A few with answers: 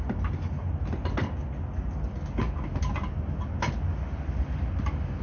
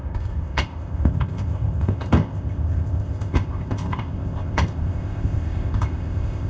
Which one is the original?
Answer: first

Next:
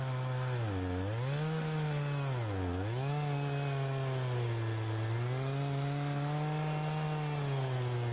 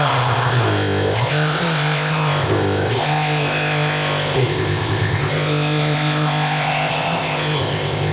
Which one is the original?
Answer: first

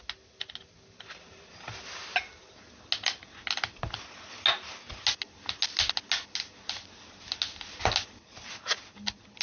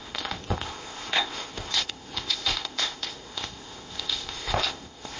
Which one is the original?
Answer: first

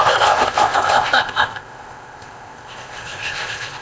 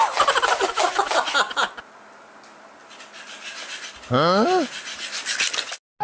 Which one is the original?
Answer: second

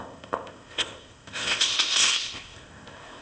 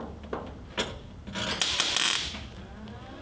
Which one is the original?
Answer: second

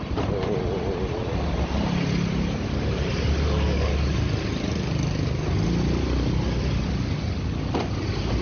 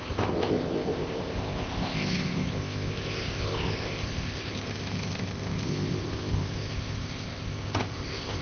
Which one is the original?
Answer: first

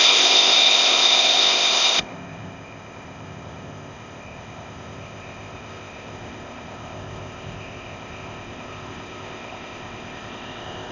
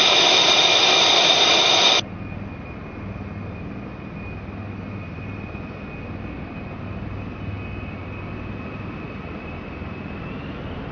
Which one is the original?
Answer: second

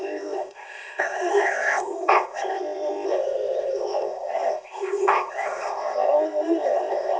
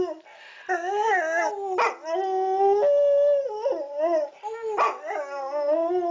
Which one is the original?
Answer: second